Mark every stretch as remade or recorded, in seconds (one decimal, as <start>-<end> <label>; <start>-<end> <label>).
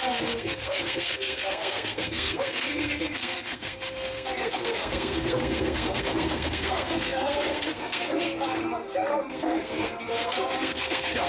0.0-11.3 remade